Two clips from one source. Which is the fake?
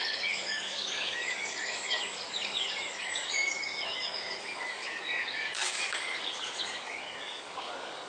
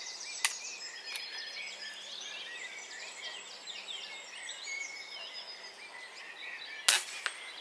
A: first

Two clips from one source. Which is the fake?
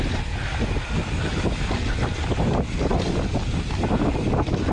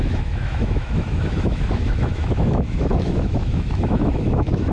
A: second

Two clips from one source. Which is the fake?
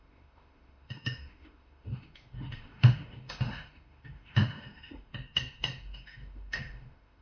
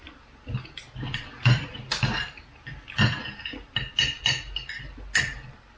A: first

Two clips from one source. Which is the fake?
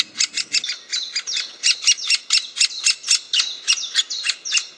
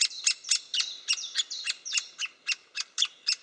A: second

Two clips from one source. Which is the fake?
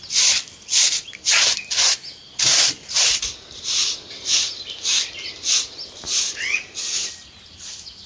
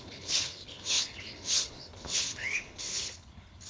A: second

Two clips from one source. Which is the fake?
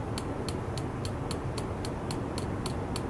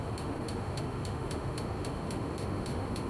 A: second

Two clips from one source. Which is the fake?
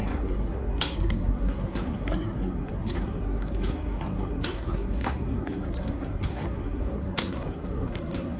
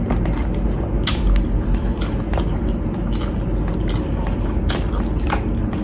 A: first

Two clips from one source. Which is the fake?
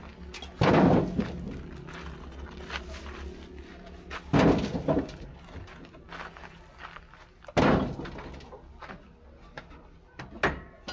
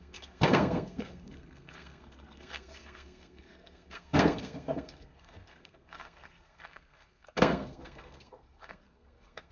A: second